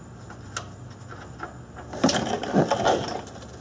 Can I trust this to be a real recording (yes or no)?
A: yes